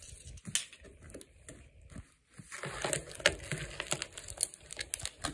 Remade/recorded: recorded